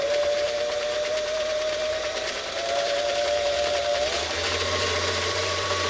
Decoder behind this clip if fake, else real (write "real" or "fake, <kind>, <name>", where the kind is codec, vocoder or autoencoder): fake, vocoder, BigVGAN v2